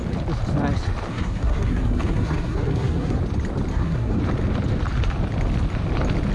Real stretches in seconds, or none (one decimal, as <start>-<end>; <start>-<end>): 0.0-1.1; 3.2-3.7; 4.2-6.3